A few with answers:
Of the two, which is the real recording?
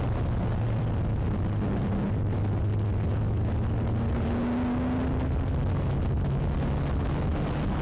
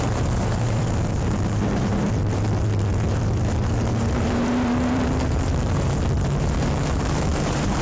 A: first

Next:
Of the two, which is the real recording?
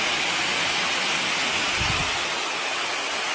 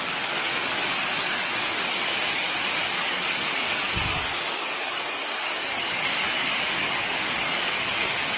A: first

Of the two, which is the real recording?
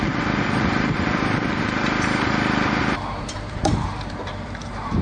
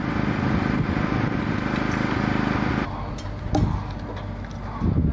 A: second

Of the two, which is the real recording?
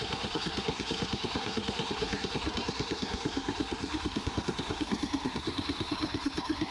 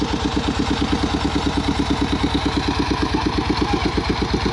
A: second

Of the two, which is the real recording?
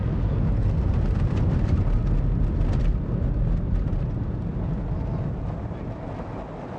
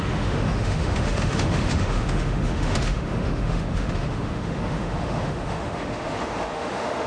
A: first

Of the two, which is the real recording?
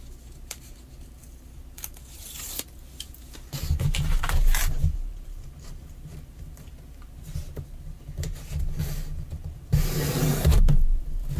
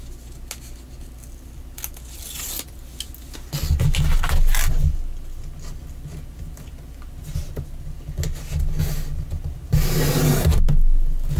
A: second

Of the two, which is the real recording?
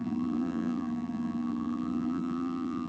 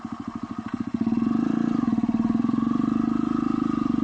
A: second